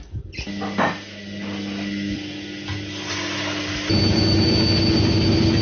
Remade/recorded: recorded